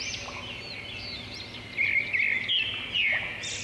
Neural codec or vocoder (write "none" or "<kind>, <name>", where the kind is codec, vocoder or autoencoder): none